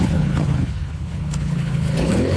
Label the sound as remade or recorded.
remade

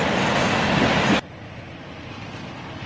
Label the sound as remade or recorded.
recorded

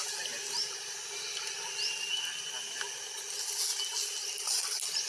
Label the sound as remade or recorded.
recorded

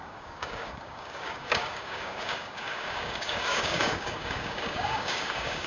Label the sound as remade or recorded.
remade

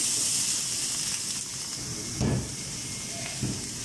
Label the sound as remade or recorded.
recorded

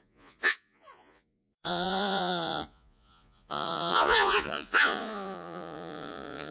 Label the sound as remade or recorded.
remade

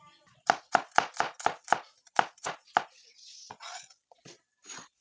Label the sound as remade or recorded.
recorded